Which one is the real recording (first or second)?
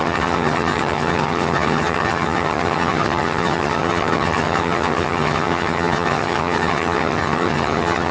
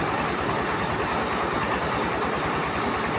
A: second